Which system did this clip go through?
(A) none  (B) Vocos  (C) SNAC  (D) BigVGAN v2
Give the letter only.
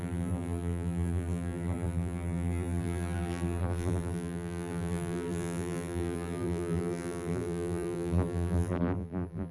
D